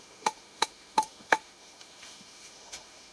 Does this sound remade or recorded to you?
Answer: remade